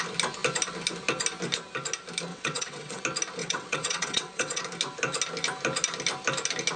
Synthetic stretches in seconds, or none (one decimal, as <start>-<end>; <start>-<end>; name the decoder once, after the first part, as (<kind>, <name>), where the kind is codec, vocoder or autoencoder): 2.3-3.0 (vocoder, WaveNeXt); 3.4-4.6